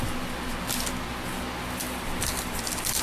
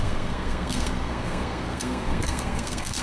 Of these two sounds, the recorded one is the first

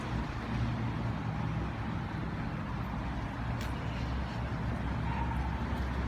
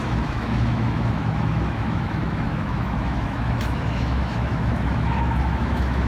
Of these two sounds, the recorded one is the first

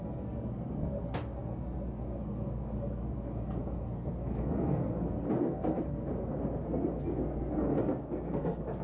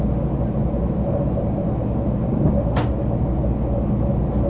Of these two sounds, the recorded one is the second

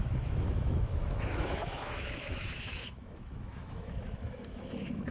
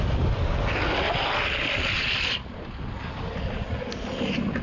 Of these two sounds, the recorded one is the second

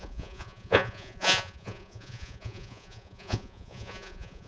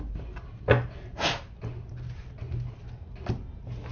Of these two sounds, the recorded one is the second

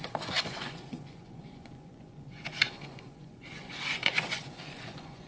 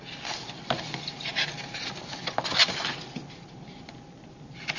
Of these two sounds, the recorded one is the second